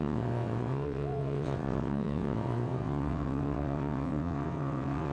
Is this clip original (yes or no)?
no